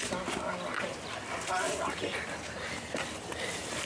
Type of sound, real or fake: real